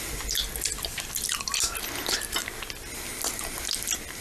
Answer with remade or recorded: recorded